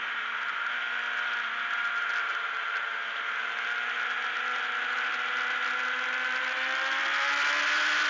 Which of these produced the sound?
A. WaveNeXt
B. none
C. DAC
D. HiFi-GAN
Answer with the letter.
B